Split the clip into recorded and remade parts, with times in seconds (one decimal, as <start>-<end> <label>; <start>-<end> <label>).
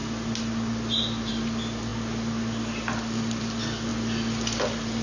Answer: 0.0-5.0 recorded